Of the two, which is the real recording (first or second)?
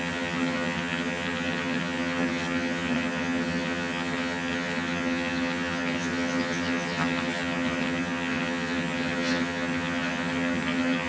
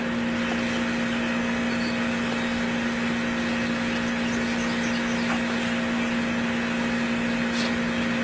second